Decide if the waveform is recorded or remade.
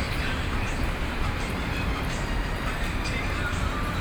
remade